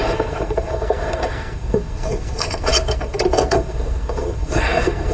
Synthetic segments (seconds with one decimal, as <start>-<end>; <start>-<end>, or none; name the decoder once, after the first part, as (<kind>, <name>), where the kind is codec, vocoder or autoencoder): 0.0-5.1 (codec, SNAC)